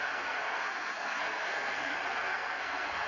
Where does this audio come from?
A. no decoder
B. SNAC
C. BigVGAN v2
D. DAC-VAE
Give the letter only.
B